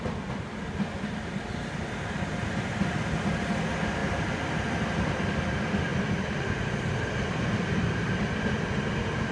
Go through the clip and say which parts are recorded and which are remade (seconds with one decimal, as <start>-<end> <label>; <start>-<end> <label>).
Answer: 0.0-5.9 recorded; 5.9-8.1 remade; 8.1-9.3 recorded